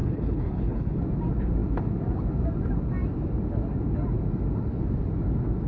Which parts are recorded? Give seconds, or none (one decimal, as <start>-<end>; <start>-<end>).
1.0-5.7